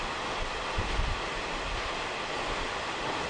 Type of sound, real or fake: real